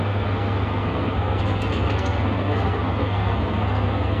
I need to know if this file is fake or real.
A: fake